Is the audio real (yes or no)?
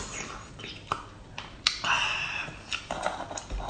yes